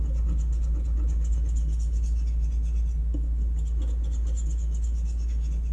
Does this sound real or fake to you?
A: real